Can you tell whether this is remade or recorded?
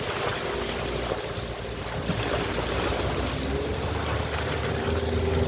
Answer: recorded